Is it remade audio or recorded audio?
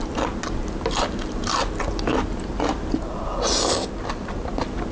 recorded